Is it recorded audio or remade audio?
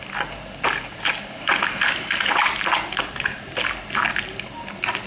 recorded